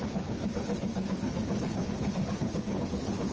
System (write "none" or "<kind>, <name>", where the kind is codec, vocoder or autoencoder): codec, HILCodec